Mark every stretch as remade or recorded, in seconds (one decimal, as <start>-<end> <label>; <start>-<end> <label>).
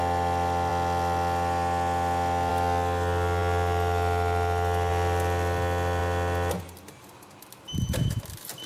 0.0-8.7 recorded